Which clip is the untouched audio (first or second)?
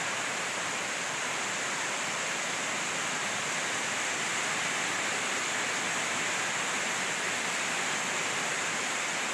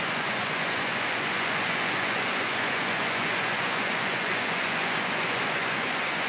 first